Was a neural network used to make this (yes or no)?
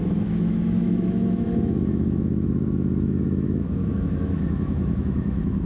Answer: yes